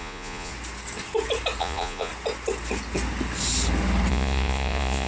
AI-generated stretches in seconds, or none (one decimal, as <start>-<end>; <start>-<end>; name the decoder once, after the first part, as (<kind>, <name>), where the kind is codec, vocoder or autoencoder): 0.0-0.5 (vocoder, Vocos); 1.6-2.1; 4.1-5.1